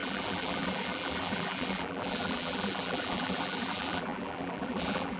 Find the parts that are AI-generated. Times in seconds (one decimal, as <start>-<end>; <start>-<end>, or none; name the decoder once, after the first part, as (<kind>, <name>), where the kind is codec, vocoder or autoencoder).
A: 0.0-5.2 (vocoder, BigVGAN v2)